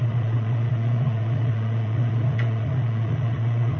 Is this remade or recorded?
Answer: remade